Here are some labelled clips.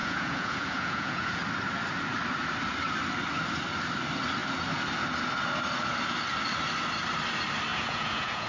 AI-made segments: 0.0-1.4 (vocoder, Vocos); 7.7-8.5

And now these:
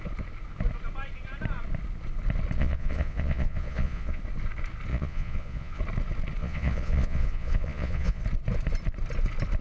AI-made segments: 2.6-4.2 (vocoder, Vocos); 4.9-5.8; 6.4-8.2

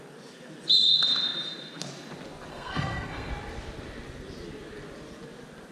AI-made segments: 2.5-3.3 (codec, SNAC)

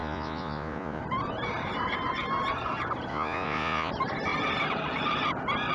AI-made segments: 0.0-1.0 (vocoder, Vocos); 3.1-3.9

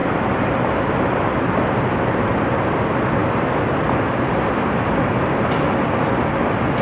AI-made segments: 0.0-1.5 (vocoder, BigVGAN v2)

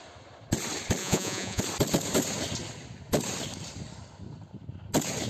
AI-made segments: 1.0-1.6 (vocoder, Vocos)

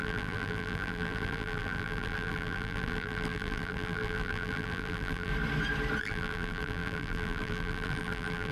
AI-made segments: 0.0-5.3 (vocoder, BigVGAN v2); 6.0-8.5

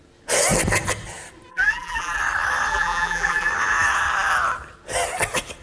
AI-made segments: 1.5-2.2 (vocoder, BigVGAN v2); 2.7-3.5